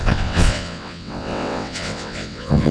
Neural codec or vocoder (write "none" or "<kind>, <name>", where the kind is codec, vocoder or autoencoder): vocoder, WaveNeXt